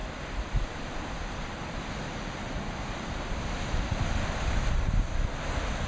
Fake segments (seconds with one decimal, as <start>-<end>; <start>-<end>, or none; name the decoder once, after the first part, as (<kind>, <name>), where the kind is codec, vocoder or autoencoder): none